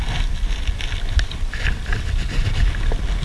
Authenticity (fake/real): real